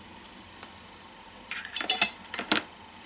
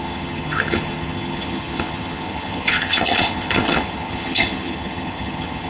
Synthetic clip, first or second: second